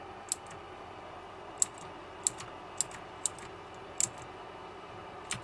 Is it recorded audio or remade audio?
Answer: recorded